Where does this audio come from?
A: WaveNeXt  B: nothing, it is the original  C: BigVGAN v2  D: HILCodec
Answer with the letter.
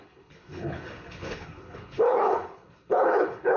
D